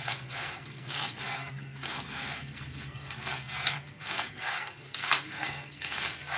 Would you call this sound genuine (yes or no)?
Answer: no